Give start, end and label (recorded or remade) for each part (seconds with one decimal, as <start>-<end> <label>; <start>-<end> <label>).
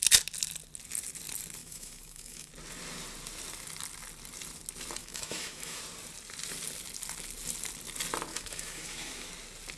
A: 0.0-1.6 recorded; 1.6-2.5 remade; 2.5-5.0 recorded; 5.0-5.8 remade; 5.8-8.3 recorded; 8.3-9.3 remade; 9.3-9.8 recorded